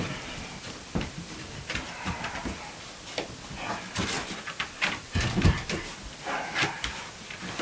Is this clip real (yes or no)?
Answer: yes